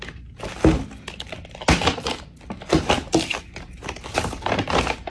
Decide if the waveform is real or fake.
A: real